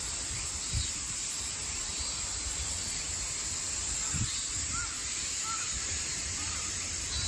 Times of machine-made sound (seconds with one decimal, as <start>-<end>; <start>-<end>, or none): 0.0-5.0; 5.7-7.3

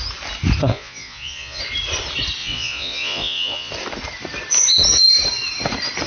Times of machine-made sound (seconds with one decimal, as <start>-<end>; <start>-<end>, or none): 0.7-1.6; 2.4-3.7

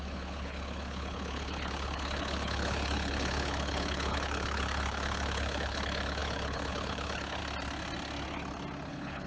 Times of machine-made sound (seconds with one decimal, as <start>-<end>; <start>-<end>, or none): 0.0-7.4; 8.9-9.3

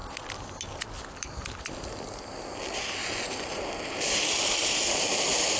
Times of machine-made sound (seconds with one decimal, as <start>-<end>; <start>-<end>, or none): 3.0-3.6

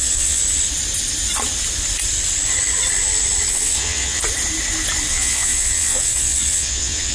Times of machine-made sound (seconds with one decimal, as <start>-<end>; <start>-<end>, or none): 0.0-0.4; 3.5-4.2; 5.1-7.1